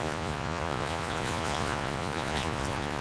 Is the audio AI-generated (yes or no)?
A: yes